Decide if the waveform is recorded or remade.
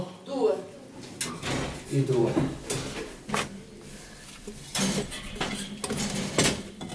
recorded